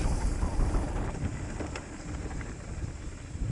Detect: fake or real real